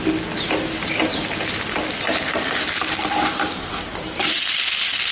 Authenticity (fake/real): real